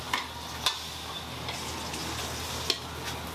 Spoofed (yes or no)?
no